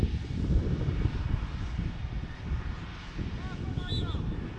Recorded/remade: recorded